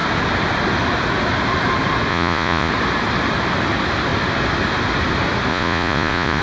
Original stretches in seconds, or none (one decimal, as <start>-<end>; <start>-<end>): 0.0-2.1; 2.7-5.5